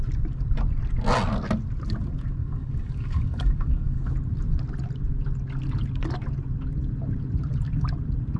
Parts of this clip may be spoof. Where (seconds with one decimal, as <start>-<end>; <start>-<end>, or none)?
2.4-4.0